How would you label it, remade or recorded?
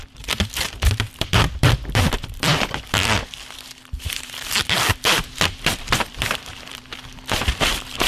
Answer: remade